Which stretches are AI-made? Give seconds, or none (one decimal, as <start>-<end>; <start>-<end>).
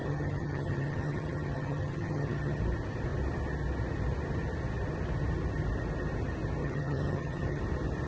0.0-2.6; 6.6-7.6